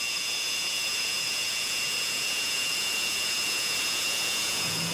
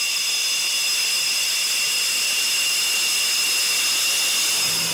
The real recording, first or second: second